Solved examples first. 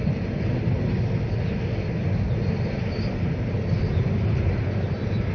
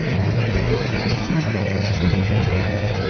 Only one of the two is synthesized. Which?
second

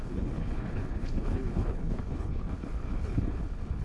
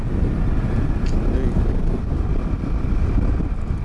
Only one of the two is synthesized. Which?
first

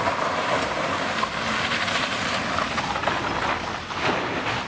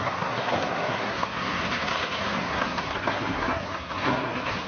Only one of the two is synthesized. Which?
second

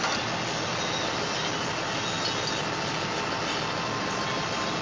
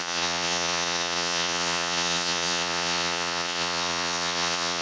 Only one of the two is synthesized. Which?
second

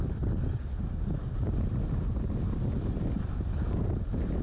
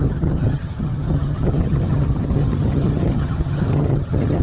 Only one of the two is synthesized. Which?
second